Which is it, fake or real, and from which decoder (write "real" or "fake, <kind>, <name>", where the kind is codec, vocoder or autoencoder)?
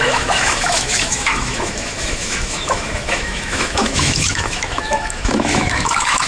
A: fake, autoencoder, DAC-VAE